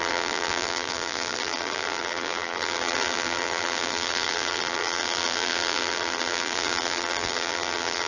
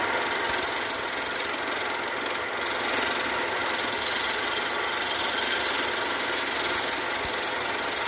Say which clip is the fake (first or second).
first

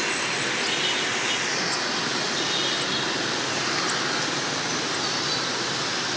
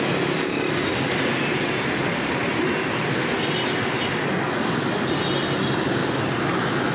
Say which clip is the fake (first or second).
second